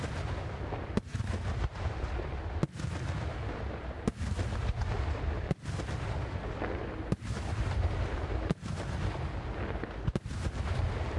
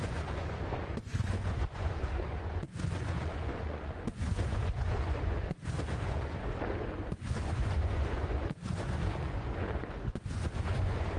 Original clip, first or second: first